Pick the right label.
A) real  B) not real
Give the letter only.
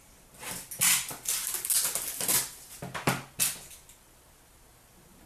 A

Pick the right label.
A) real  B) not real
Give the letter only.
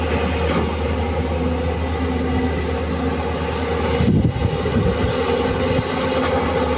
A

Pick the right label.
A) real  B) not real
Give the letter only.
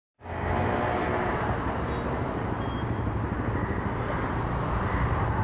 A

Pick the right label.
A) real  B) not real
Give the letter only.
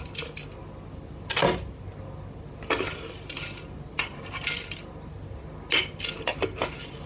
A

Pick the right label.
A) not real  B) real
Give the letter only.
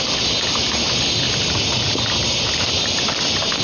B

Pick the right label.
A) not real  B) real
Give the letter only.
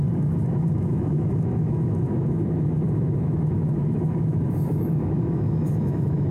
A